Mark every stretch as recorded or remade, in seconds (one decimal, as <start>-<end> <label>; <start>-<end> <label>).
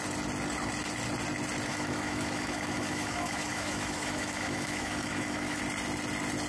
0.0-1.7 recorded; 1.7-5.6 remade; 5.6-6.5 recorded